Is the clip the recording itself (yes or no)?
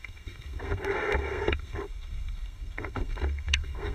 no